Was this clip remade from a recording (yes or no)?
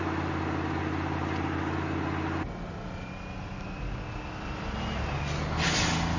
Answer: no